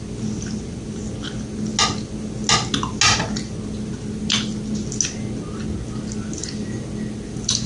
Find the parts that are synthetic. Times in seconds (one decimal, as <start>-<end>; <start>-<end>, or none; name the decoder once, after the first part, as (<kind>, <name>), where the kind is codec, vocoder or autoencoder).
none